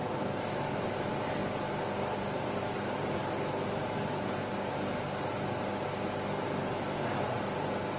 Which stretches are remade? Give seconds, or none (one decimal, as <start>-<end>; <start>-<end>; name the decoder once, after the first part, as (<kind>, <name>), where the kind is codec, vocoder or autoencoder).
0.0-1.4 (vocoder, BigVGAN v2); 2.2-3.2